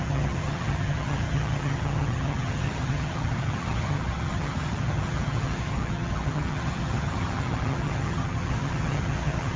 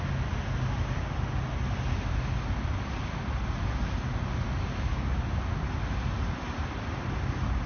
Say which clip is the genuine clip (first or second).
second